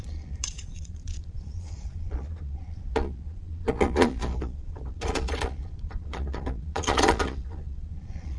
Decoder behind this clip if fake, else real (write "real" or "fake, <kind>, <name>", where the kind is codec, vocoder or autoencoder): fake, vocoder, Vocos